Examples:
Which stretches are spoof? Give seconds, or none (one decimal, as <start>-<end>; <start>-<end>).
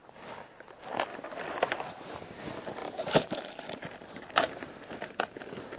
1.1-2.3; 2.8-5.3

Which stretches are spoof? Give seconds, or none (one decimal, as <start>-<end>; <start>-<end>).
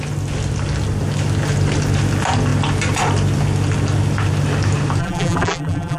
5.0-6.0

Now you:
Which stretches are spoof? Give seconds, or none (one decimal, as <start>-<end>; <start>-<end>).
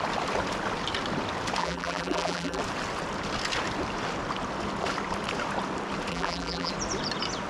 1.6-2.6; 6.1-6.7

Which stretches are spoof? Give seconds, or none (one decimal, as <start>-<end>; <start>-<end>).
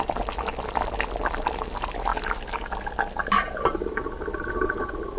none